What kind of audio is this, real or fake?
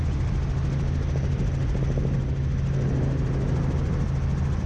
real